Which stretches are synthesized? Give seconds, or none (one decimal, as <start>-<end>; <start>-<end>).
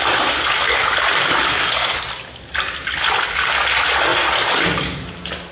1.5-2.0